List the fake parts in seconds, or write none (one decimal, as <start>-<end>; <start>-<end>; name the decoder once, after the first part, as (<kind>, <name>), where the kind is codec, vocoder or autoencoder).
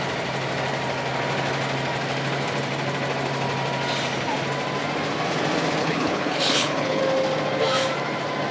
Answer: 5.8-7.0 (codec, HILCodec)